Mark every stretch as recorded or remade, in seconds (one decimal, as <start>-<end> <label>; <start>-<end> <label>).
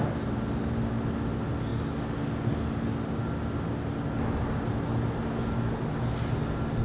0.0-6.8 recorded